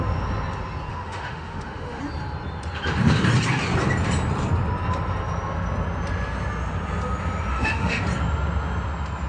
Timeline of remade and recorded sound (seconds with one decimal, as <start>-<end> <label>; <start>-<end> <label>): 0.0-0.9 recorded; 0.9-2.0 remade; 2.0-7.5 recorded; 7.5-8.0 remade; 8.0-9.3 recorded